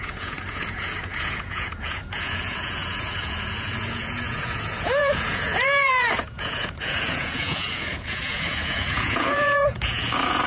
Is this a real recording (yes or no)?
no